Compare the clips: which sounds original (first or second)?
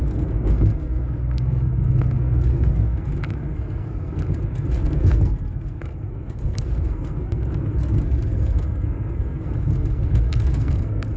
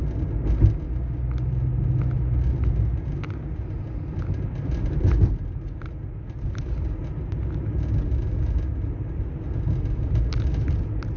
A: second